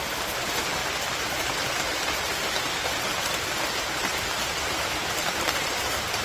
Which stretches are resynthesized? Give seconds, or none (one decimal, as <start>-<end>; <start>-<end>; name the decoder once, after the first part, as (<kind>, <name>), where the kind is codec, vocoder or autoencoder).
0.0-0.8 (vocoder, BigVGAN v2); 1.7-2.7; 3.8-6.2